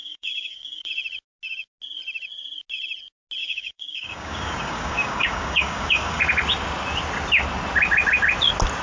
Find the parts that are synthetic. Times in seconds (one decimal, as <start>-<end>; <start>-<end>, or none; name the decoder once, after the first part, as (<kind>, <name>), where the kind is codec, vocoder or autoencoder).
0.0-0.9 (codec, DAC); 3.4-6.2

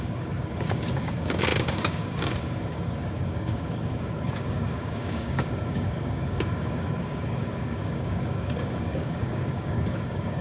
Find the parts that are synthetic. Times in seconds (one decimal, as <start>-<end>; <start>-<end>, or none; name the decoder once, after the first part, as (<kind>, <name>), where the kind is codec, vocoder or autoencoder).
0.0-10.4 (codec, DAC)

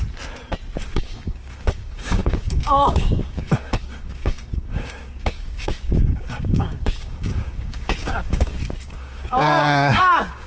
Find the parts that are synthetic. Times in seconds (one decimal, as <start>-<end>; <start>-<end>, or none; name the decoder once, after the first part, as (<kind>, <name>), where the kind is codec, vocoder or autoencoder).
0.8-10.5 (codec, DAC)

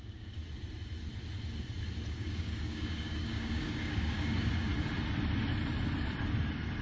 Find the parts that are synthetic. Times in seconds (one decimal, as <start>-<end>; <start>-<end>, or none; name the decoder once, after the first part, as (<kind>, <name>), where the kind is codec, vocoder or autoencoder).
0.0-0.4 (codec, DAC); 2.1-4.7

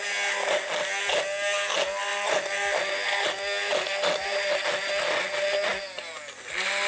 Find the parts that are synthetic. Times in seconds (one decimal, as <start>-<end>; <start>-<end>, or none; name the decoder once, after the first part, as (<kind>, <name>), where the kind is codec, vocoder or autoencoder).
none